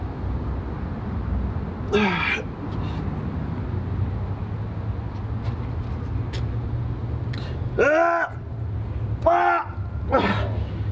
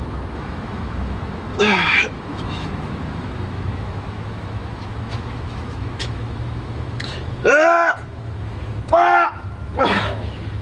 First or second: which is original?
first